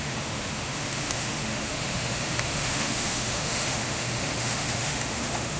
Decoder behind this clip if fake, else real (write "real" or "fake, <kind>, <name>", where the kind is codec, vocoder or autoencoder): fake, autoencoder, DAC-VAE